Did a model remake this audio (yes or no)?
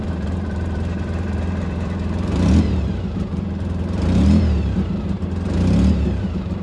yes